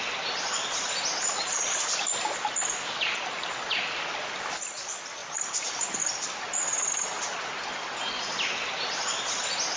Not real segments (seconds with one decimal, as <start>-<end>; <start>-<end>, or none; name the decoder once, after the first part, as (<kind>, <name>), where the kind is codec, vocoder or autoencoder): 5.2-6.0 (vocoder, BigVGAN v2)